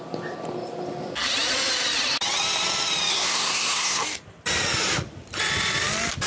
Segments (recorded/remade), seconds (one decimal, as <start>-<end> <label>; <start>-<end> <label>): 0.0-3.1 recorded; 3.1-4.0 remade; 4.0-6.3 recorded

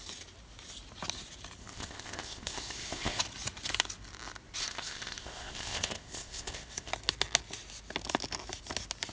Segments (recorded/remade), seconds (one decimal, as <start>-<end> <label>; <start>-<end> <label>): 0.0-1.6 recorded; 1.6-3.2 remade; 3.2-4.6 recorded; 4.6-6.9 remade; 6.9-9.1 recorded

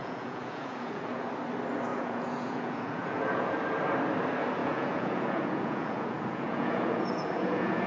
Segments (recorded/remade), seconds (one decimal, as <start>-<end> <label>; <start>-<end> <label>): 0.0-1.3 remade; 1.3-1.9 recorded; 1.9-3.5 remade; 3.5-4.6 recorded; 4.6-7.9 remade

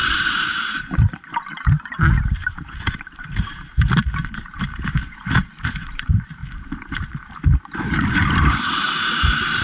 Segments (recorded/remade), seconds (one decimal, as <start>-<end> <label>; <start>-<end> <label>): 0.0-4.4 recorded; 4.4-6.4 remade; 6.4-6.9 recorded; 6.9-9.6 remade